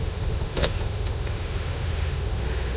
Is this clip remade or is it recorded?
remade